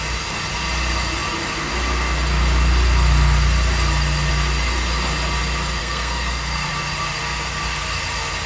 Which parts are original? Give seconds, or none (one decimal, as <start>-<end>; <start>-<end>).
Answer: 0.0-5.8; 6.7-8.5